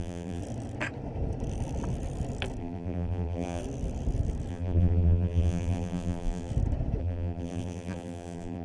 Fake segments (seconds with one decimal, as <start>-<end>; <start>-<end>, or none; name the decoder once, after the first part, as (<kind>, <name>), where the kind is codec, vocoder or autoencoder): 0.0-0.4 (vocoder, BigVGAN v2); 2.6-3.6; 4.5-6.5; 7.0-8.6